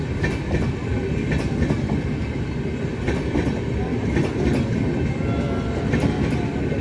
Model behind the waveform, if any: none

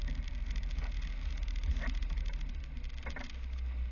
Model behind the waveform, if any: none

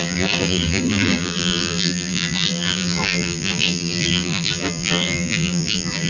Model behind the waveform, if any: vocoder, BigVGAN v2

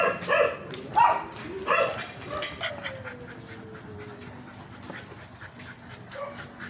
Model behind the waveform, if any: none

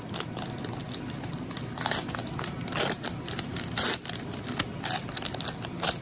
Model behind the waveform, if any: none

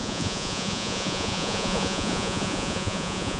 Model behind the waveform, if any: vocoder, Vocos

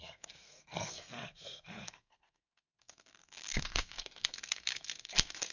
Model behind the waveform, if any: codec, SNAC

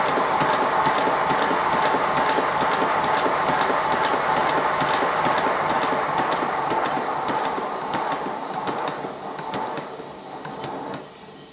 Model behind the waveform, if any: none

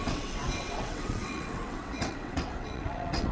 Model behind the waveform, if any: vocoder, WaveNeXt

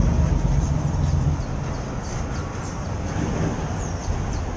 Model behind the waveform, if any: none